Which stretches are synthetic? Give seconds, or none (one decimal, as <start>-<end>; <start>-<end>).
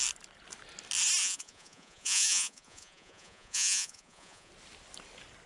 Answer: 1.2-4.5